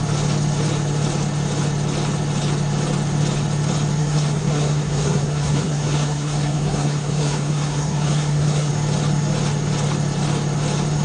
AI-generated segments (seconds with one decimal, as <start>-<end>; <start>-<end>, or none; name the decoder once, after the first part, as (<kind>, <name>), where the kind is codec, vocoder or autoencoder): 4.0-8.7 (codec, SNAC)

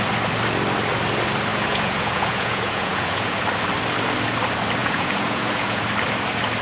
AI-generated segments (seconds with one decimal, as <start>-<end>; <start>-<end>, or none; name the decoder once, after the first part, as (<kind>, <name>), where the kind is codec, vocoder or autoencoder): 1.5-3.4 (vocoder, Vocos); 4.8-5.8

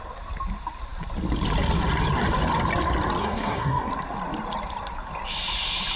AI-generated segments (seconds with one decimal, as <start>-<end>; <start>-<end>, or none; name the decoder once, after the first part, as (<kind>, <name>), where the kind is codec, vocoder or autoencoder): 3.2-3.9 (codec, SNAC)